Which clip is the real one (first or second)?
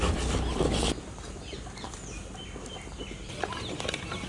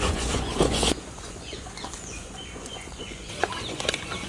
first